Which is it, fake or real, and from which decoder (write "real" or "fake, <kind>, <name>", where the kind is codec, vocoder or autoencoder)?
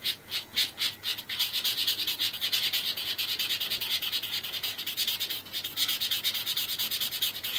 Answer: fake, vocoder, Vocos